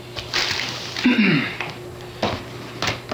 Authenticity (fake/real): real